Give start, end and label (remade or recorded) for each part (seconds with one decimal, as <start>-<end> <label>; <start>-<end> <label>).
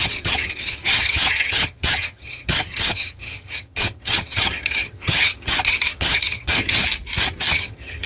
0.0-6.8 remade; 6.8-7.5 recorded; 7.5-8.1 remade